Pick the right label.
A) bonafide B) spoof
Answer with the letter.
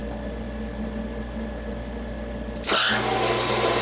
A